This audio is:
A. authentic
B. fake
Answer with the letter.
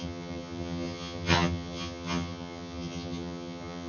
B